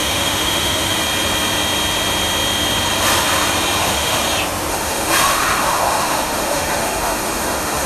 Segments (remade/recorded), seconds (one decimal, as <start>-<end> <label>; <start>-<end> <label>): 0.0-1.0 remade; 1.0-3.8 recorded; 3.8-4.2 remade; 4.2-4.7 recorded; 4.7-7.9 remade